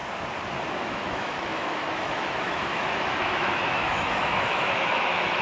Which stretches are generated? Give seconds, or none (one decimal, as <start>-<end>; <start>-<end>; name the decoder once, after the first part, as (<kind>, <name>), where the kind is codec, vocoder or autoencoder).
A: 0.7-5.4 (autoencoder, DAC-VAE)